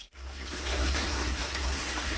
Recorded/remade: remade